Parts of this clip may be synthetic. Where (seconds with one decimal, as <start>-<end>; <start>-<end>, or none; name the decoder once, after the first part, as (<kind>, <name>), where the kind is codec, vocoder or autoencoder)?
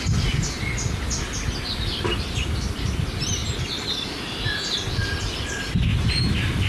5.9-6.7 (vocoder, BigVGAN v2)